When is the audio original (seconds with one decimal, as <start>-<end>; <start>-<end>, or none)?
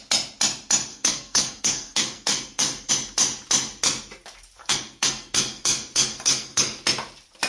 0.0-0.9; 2.9-4.6; 6.6-7.5